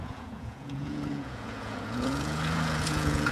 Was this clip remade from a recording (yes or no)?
yes